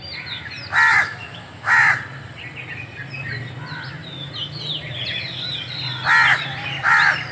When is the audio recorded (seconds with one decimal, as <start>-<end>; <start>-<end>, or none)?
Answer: 0.0-0.9; 1.9-7.3